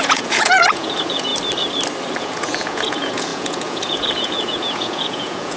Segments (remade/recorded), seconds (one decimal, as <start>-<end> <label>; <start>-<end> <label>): 0.0-1.3 remade; 1.3-2.2 recorded; 2.2-5.6 remade

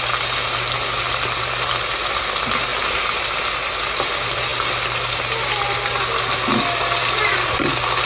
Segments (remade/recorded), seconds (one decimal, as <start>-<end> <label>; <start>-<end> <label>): 0.0-8.1 recorded

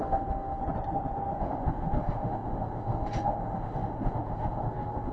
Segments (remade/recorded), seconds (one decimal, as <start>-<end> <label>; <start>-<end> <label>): 0.0-0.6 remade; 0.6-1.4 recorded; 1.4-5.1 remade

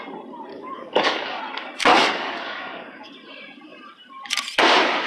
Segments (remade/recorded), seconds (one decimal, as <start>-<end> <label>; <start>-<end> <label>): 0.0-0.5 recorded; 0.5-1.4 remade; 1.4-1.9 recorded; 1.9-3.1 remade; 3.1-5.1 recorded